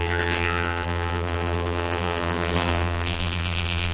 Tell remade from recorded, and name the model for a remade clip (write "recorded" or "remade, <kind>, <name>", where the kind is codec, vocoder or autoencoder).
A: remade, vocoder, BigVGAN v2